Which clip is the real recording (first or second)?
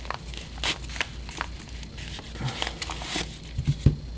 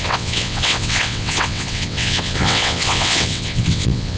first